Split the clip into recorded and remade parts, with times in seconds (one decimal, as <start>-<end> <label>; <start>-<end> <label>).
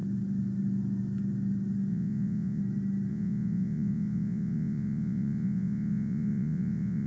0.0-1.9 recorded; 1.9-2.6 remade; 2.6-3.1 recorded; 3.1-7.1 remade